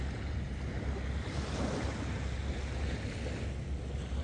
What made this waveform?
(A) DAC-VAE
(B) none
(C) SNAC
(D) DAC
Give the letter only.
B